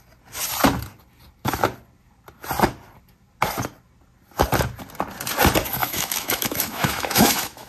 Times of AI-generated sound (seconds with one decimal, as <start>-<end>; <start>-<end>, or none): 5.8-7.7